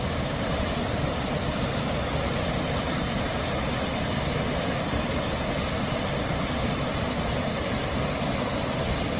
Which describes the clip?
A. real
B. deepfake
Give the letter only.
A